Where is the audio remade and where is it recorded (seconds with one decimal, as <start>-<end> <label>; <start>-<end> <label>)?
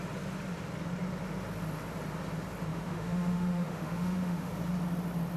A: 0.0-2.7 recorded; 2.7-4.5 remade; 4.5-5.4 recorded